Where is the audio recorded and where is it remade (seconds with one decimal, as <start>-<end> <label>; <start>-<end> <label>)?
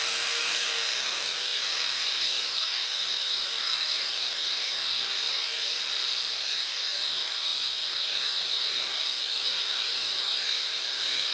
0.0-5.8 remade; 5.8-6.3 recorded; 6.3-11.3 remade